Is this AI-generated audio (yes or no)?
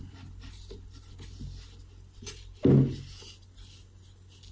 no